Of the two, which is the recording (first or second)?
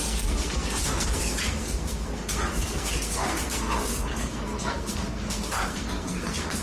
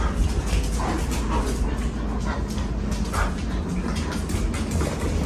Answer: second